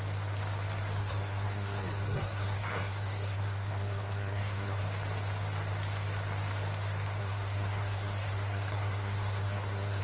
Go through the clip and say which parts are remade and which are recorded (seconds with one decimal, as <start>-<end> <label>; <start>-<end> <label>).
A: 0.0-1.0 recorded; 1.0-4.8 remade; 4.8-7.2 recorded; 7.2-10.0 remade